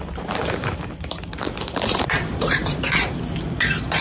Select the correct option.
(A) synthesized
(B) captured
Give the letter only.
A